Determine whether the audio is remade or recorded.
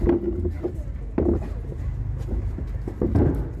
recorded